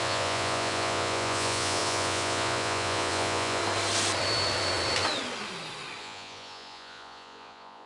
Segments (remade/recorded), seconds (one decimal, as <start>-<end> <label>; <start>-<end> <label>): 0.0-3.6 remade; 3.6-6.0 recorded; 6.0-7.9 remade